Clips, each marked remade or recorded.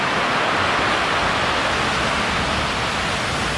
recorded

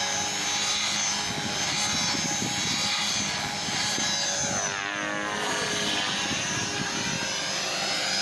recorded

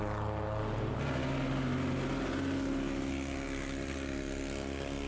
recorded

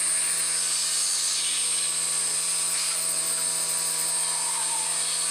recorded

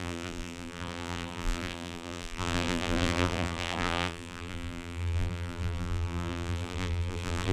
remade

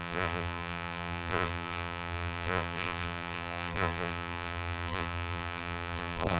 remade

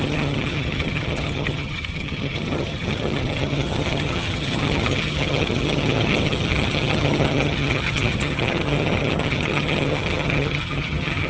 remade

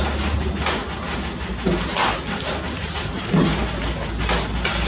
recorded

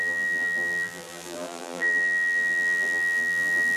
remade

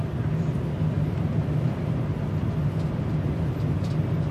recorded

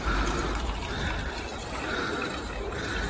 remade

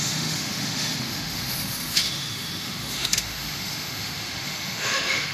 remade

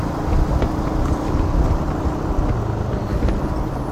recorded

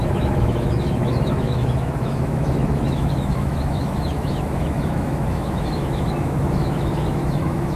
remade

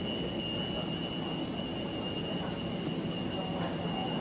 recorded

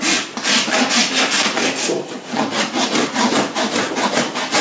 recorded